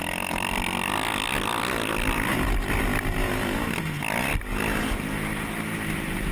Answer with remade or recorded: recorded